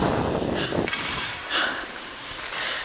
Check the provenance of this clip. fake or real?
real